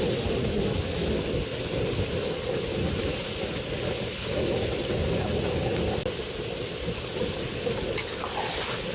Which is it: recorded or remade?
recorded